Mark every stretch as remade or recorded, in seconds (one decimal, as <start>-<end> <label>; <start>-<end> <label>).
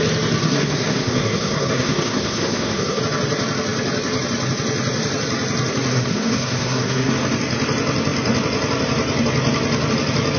0.0-0.4 recorded; 0.4-3.0 remade; 3.0-5.9 recorded; 5.9-7.1 remade; 7.1-10.4 recorded